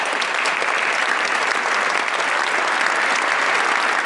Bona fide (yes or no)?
yes